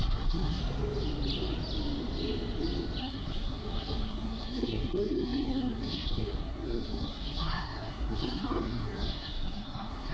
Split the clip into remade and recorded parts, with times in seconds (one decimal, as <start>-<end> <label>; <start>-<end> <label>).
0.0-0.6 remade; 0.6-3.0 recorded; 3.0-10.1 remade